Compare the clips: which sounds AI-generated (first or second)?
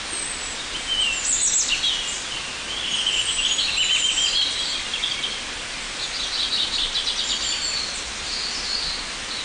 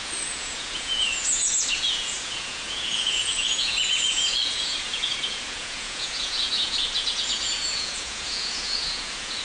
second